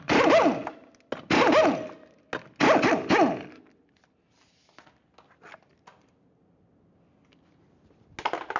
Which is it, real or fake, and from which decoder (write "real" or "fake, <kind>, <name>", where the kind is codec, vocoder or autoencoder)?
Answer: real